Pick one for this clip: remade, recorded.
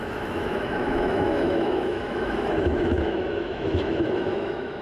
remade